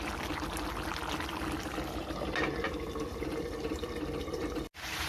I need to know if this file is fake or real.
real